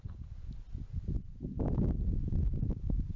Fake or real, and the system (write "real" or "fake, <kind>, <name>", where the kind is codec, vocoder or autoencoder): real